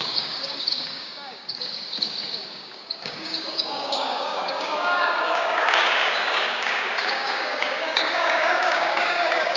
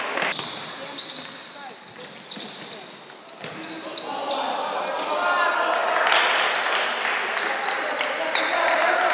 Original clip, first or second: second